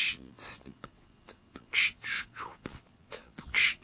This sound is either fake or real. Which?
fake